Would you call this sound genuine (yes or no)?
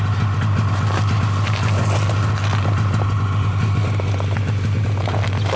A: yes